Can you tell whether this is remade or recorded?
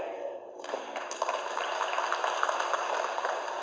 remade